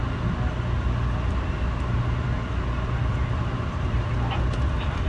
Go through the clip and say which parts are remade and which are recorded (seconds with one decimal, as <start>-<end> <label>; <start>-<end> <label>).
0.0-3.1 recorded; 3.1-4.1 remade; 4.1-5.1 recorded